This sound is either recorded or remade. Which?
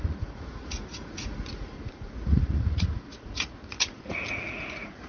remade